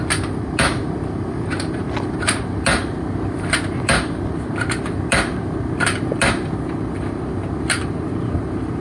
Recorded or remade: recorded